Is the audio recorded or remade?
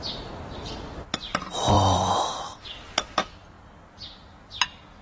recorded